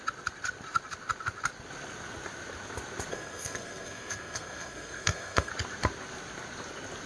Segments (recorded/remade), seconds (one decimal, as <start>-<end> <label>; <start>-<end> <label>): 0.0-3.1 recorded; 3.1-5.5 remade; 5.5-7.1 recorded